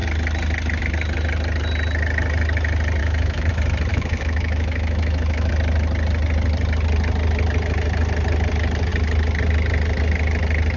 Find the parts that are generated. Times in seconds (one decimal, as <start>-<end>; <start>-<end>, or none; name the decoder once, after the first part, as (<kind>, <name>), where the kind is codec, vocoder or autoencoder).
3.0-3.5 (autoencoder, DAC-VAE); 3.9-5.5